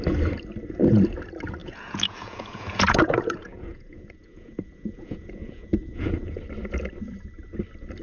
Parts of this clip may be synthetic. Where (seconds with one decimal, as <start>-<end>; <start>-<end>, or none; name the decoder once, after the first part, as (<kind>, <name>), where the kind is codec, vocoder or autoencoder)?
1.6-6.4 (vocoder, Vocos)